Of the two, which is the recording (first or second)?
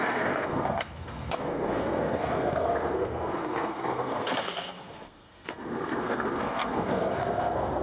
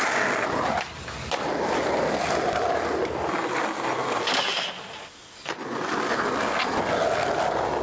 second